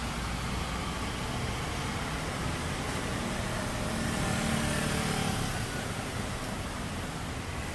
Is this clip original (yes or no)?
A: yes